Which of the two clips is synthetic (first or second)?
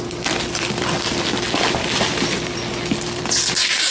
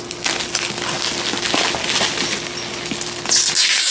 first